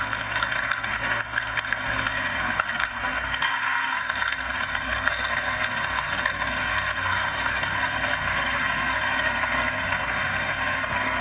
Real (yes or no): no